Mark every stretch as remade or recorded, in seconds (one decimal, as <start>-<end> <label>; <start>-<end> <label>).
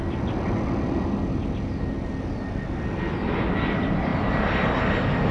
0.0-5.3 recorded